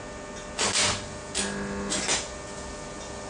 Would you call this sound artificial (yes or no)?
no